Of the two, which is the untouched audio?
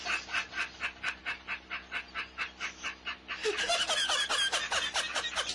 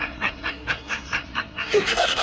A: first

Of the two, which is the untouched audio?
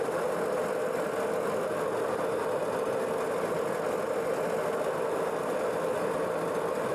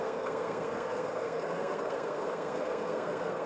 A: first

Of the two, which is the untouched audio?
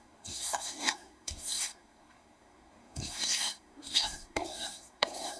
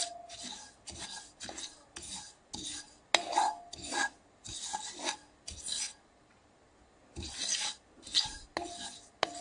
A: second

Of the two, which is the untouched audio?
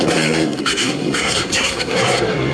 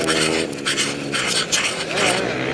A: second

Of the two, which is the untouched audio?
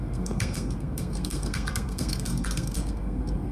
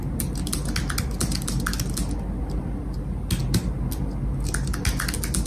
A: second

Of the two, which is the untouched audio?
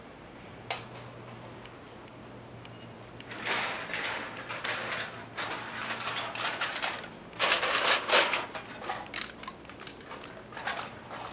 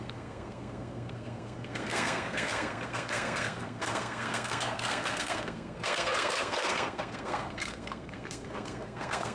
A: first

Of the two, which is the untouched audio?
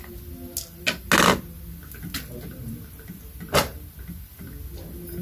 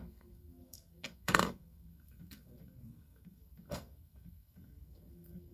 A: first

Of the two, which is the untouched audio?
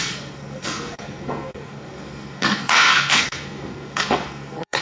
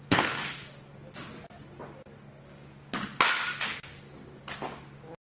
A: second